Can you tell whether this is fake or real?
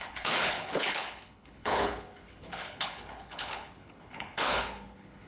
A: fake